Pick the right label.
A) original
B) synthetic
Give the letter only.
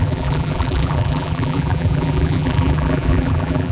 B